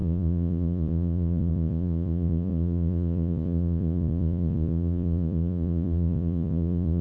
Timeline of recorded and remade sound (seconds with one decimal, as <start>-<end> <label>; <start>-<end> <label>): 0.0-7.0 remade